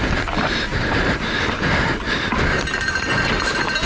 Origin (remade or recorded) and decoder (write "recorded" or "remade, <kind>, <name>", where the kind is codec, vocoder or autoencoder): remade, vocoder, BigVGAN v2